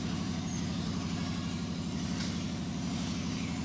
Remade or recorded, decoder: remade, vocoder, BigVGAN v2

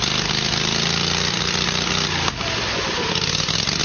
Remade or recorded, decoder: recorded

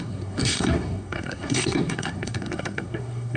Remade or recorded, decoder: remade, codec, SNAC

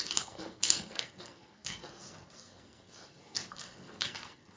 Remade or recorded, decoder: remade, codec, SNAC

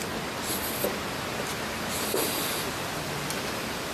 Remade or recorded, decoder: recorded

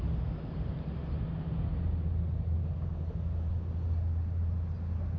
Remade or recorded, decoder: recorded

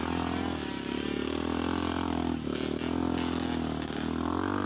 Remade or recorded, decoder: recorded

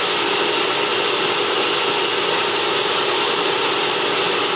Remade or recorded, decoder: recorded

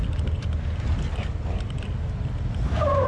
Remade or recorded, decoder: recorded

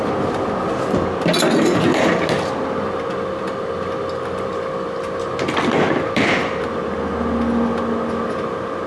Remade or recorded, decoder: recorded